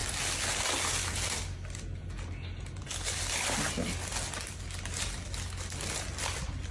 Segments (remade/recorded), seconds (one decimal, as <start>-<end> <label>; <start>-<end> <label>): 0.0-6.7 recorded